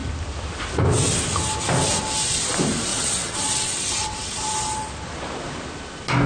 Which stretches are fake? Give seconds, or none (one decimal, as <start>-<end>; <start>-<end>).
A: 2.9-4.4